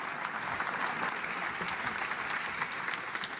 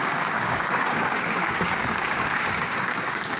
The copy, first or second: second